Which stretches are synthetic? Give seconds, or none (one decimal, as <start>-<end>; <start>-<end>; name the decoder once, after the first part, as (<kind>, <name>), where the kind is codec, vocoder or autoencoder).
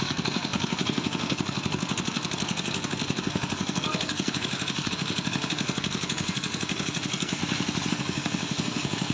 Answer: 0.0-7.4 (codec, SNAC); 7.9-9.1